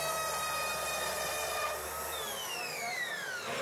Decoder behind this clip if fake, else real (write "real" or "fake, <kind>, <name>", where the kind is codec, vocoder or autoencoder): real